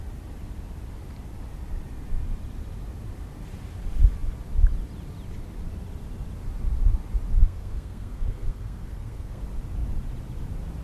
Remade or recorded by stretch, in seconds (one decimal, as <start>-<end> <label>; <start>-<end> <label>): 0.0-7.4 recorded; 7.4-9.4 remade; 9.4-10.8 recorded